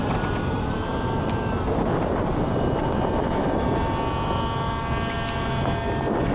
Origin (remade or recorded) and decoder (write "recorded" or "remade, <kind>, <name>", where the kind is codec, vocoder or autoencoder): recorded